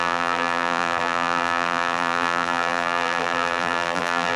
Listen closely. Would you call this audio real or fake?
fake